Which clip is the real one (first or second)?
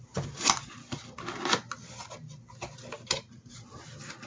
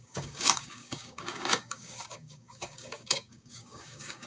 first